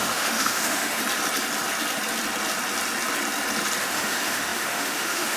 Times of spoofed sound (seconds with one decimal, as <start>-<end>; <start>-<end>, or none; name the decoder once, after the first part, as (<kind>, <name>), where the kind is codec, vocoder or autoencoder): 0.0-1.0 (autoencoder, DAC-VAE); 3.8-5.4